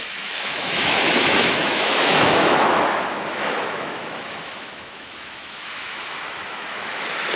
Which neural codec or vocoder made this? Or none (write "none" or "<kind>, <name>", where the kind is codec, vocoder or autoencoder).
autoencoder, DAC-VAE